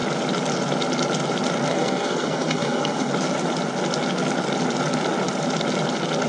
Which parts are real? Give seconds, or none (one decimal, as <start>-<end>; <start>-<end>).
0.0-1.7; 3.1-6.3